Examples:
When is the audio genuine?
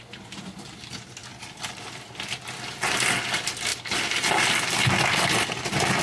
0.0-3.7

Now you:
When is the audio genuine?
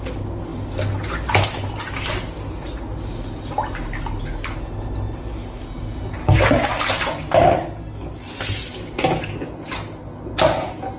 0.0-6.2; 6.8-11.0